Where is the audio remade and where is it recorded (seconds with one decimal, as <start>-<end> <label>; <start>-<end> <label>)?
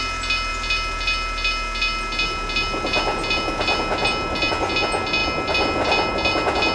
0.0-6.7 recorded